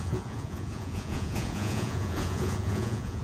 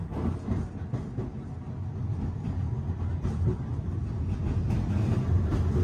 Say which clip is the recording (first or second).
second